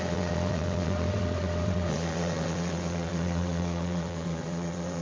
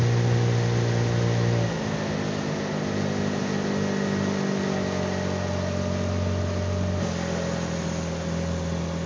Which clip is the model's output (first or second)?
first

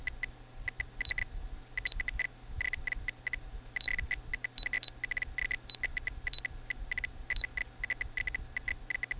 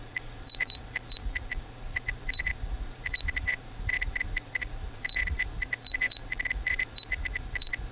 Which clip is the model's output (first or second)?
second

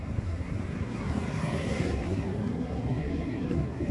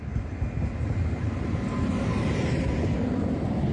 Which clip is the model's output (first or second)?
first